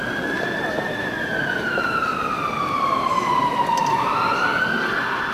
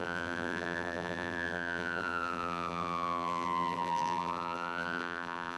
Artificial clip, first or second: second